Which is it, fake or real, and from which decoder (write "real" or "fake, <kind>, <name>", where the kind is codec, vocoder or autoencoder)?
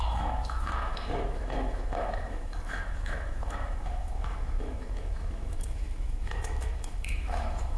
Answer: fake, autoencoder, DAC-VAE